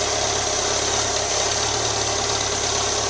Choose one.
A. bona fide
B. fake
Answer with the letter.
A